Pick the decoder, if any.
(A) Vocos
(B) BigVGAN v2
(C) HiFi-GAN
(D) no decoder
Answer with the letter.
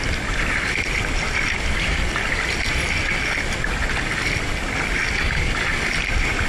D